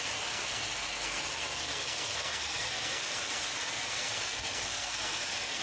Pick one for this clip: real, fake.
fake